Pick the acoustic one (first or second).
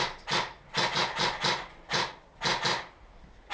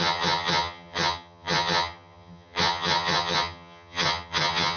first